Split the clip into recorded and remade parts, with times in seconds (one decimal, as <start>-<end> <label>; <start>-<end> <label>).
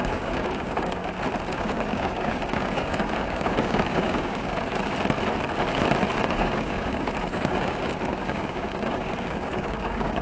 0.0-1.0 remade; 1.0-1.5 recorded; 1.5-4.9 remade; 4.9-6.1 recorded; 6.1-10.2 remade